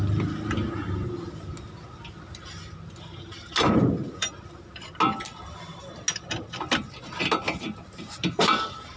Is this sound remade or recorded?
recorded